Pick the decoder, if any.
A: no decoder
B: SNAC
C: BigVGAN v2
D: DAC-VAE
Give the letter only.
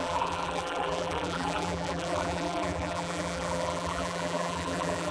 C